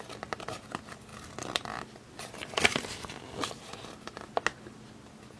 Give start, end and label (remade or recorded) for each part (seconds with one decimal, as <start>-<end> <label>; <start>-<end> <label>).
0.0-1.1 recorded; 1.1-3.5 remade; 3.5-5.4 recorded